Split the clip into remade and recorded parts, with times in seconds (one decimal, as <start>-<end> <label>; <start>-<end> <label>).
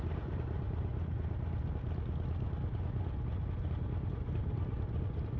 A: 0.0-0.9 remade; 0.9-4.1 recorded; 4.1-5.4 remade